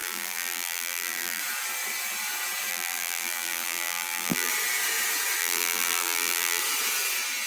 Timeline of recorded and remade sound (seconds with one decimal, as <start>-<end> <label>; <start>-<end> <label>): 0.0-1.4 remade; 1.4-2.7 recorded; 2.7-4.5 remade; 4.5-5.4 recorded; 5.4-6.6 remade; 6.6-7.5 recorded